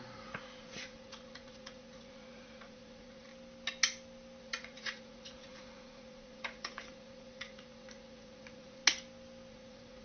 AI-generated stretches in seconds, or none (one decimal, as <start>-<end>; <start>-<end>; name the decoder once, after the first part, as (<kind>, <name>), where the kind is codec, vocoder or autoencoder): 0.0-3.3 (vocoder, Vocos); 4.4-8.8; 9.5-10.0